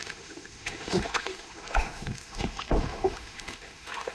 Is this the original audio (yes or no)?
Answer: no